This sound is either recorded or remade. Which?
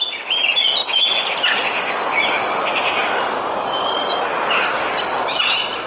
recorded